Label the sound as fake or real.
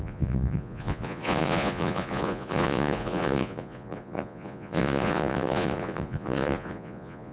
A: fake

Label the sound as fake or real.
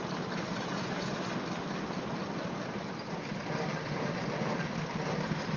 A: real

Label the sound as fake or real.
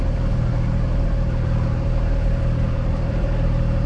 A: real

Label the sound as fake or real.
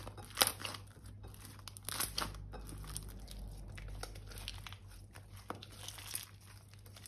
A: real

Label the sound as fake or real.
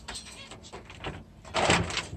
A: real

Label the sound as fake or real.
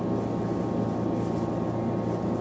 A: real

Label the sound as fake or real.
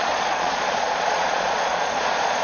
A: fake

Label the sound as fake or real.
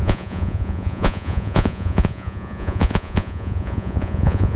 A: fake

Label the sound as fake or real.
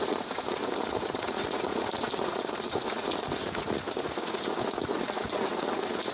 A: fake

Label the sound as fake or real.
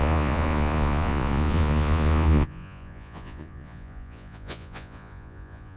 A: fake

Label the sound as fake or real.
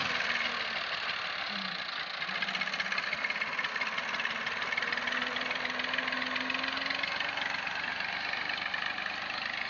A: real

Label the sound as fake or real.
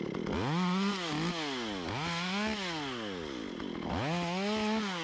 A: real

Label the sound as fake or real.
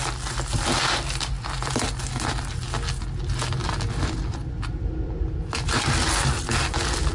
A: real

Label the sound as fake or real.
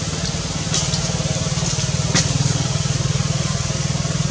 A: real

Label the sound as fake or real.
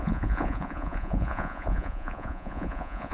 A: fake